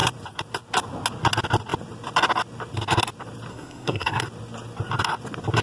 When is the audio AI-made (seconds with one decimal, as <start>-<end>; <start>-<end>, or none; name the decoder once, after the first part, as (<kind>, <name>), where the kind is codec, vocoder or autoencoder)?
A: 3.5-4.2 (codec, SNAC)